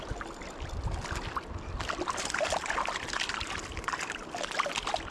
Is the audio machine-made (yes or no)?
no